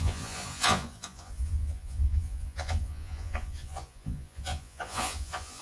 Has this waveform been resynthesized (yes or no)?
yes